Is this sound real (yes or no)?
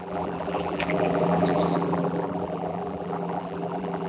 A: no